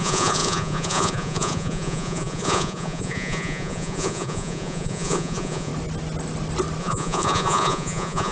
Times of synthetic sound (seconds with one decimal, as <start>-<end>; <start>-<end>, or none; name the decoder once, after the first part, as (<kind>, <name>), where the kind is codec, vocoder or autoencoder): 0.0-5.7 (vocoder, Vocos); 6.8-8.3